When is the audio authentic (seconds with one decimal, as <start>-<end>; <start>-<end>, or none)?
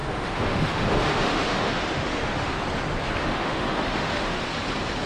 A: 2.6-3.2; 4.4-5.1